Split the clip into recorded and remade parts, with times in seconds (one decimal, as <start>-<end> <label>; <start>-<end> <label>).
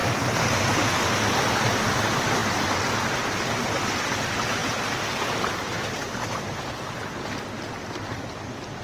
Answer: 0.0-8.8 recorded